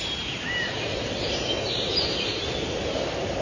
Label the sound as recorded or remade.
recorded